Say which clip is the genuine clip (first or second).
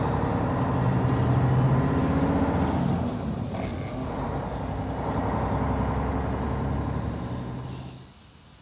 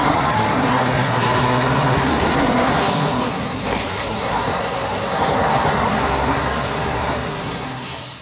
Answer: first